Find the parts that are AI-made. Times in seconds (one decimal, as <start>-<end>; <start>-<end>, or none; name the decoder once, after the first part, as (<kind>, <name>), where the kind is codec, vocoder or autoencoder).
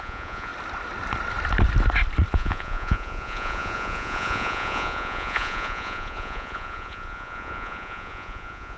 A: 0.0-0.5 (vocoder, Vocos); 2.3-8.8